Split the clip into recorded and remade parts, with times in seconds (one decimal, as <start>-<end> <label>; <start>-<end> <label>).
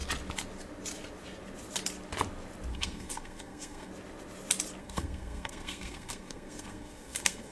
0.0-2.7 recorded; 2.7-3.9 remade; 3.9-4.8 recorded; 4.8-7.5 remade